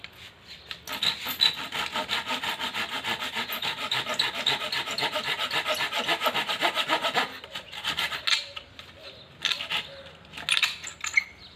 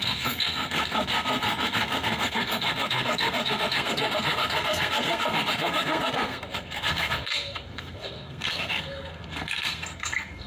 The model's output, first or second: second